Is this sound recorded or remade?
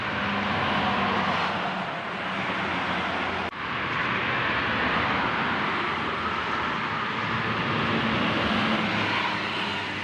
recorded